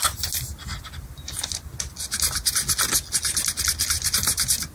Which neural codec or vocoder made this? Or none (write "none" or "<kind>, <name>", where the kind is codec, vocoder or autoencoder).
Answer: none